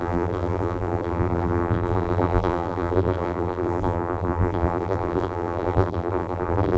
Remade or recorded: remade